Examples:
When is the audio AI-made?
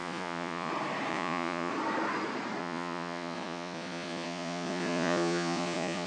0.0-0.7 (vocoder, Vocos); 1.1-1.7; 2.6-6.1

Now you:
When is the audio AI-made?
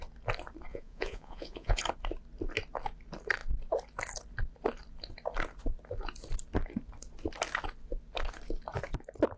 0.7-1.8 (vocoder, Vocos)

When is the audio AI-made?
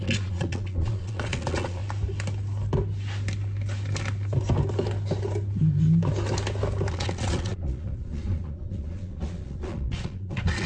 0.0-1.8 (vocoder, Vocos); 6.9-10.7